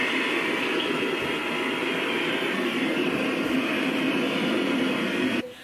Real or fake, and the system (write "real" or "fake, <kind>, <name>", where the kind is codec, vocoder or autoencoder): real